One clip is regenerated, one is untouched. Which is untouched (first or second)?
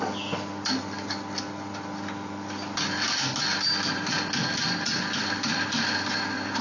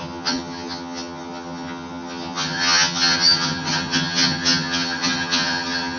first